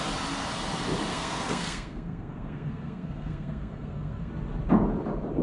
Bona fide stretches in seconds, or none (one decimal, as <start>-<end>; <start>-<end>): 0.0-1.1; 4.3-5.4